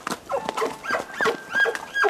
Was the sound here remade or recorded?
recorded